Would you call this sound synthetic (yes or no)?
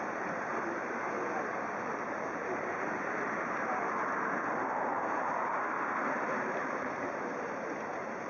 yes